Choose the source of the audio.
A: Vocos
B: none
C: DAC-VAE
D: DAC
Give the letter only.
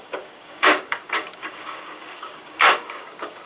D